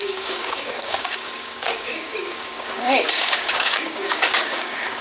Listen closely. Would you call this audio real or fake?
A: fake